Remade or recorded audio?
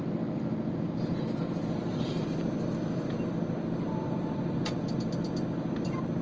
recorded